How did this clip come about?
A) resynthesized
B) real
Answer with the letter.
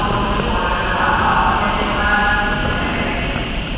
B